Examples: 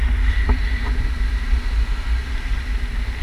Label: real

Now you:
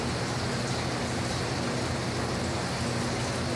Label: real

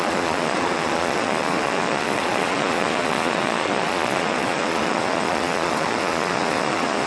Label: fake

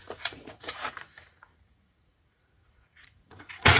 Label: fake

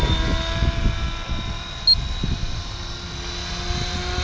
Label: real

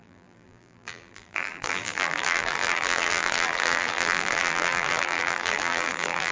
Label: fake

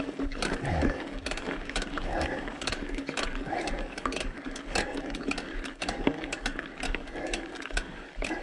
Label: fake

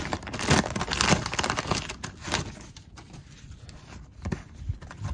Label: real